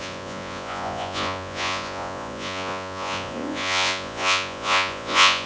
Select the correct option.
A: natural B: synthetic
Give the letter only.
B